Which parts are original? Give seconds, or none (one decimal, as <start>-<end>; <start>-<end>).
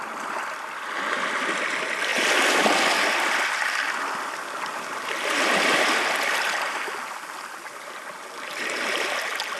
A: 0.0-9.6